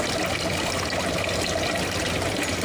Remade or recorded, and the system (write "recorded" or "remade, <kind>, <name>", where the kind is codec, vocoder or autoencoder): recorded